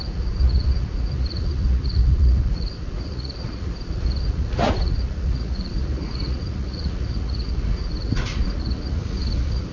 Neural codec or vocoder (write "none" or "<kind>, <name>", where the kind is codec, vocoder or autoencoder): vocoder, Vocos